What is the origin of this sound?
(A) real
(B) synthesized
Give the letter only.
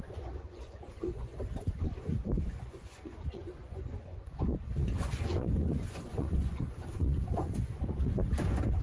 B